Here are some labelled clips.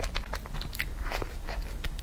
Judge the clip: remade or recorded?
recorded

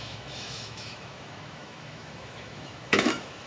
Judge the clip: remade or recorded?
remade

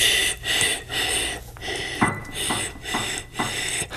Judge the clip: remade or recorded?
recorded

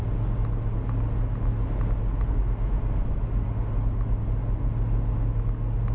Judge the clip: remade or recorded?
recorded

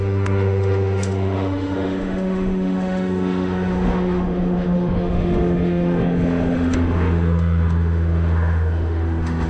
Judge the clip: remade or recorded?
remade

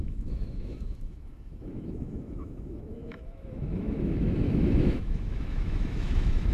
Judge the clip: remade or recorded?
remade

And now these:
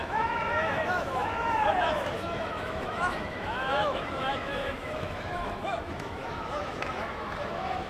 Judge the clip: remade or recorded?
remade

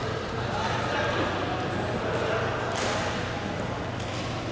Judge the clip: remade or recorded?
recorded